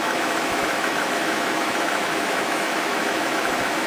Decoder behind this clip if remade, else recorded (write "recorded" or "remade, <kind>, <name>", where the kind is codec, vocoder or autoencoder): remade, autoencoder, DAC-VAE